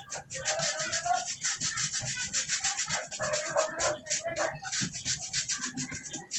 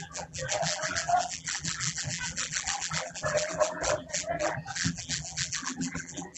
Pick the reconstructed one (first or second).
second